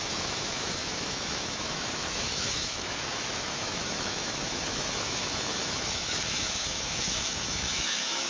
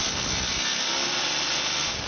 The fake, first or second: first